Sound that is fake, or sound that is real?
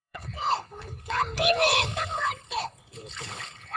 fake